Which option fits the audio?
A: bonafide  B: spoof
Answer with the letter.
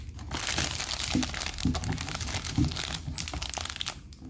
A